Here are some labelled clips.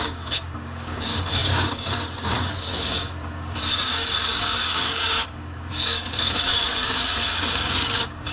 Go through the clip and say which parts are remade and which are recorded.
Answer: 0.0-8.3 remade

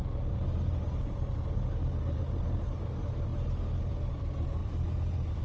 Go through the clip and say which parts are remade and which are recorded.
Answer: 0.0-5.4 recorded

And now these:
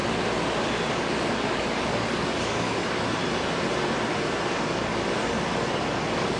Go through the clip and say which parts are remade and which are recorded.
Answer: 0.0-0.9 recorded; 0.9-3.2 remade; 3.2-4.5 recorded; 4.5-6.4 remade